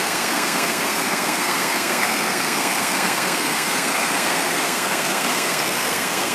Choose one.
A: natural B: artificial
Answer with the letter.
B